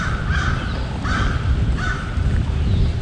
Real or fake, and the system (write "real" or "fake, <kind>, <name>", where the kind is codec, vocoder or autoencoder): real